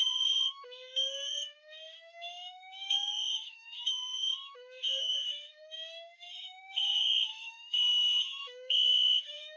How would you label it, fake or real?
fake